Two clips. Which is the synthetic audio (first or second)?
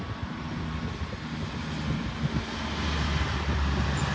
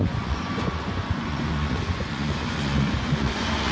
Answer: second